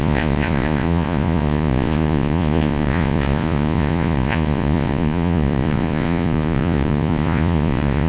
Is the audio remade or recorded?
remade